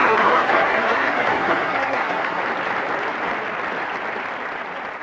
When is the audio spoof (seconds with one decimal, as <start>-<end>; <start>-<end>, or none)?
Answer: 0.0-2.4